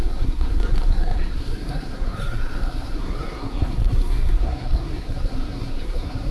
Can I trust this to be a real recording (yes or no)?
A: no